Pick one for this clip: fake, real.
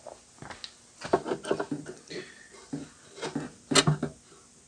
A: real